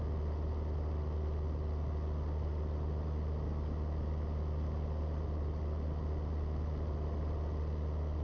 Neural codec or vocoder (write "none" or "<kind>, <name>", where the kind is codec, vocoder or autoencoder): none